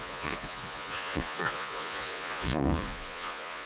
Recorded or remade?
remade